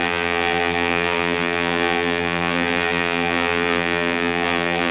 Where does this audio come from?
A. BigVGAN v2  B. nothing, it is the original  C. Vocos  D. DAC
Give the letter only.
A